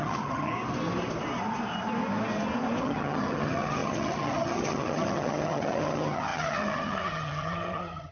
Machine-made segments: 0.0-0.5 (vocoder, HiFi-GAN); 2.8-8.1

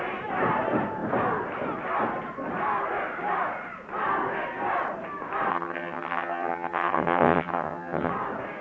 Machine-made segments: 5.5-8.1 (vocoder, HiFi-GAN)